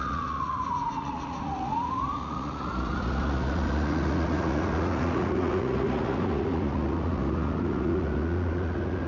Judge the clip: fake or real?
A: fake